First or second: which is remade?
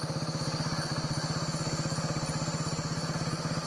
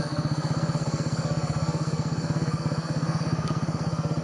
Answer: second